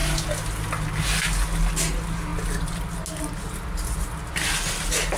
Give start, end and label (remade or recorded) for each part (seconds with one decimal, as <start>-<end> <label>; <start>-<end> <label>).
0.0-5.2 recorded